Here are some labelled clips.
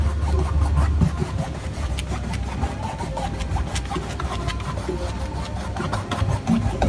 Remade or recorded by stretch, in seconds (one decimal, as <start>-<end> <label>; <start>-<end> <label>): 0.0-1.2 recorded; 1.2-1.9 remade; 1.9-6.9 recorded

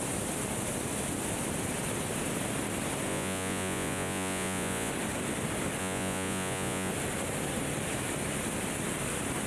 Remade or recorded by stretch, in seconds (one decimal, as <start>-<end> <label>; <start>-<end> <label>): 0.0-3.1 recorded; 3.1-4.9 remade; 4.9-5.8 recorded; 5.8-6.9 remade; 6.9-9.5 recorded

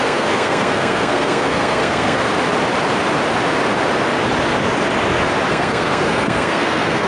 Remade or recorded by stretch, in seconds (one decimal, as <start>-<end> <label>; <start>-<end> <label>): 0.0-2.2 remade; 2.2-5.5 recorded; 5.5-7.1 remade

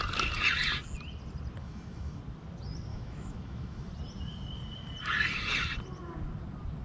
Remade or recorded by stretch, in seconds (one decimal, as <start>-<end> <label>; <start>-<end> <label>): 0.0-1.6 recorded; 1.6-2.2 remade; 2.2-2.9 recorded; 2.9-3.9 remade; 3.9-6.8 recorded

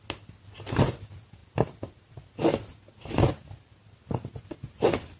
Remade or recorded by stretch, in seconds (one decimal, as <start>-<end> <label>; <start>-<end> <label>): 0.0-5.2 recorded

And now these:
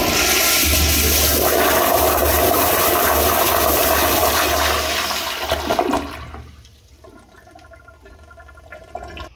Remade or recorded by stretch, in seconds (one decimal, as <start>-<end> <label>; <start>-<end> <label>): 0.0-2.2 recorded; 2.2-3.3 remade; 3.3-9.4 recorded